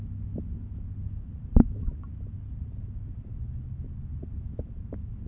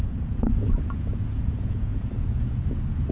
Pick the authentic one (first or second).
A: first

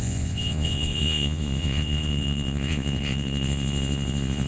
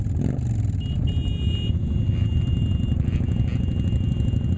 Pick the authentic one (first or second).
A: second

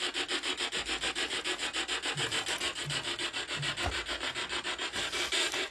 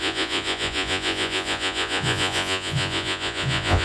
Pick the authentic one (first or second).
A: first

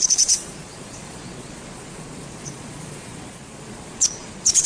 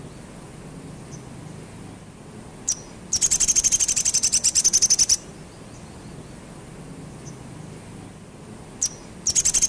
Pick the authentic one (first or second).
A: second